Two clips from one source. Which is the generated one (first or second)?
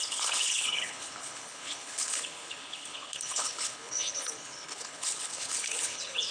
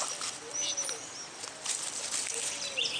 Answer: first